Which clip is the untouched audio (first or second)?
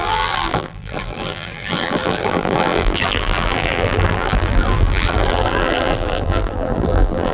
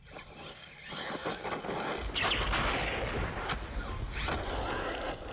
second